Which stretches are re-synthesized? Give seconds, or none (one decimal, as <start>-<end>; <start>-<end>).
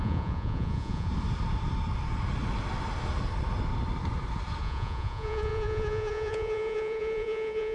0.0-1.1; 4.6-7.7